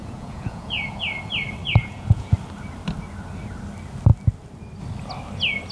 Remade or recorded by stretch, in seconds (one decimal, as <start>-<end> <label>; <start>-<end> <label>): 0.0-1.0 remade; 1.0-1.6 recorded; 1.6-2.3 remade; 2.3-5.7 recorded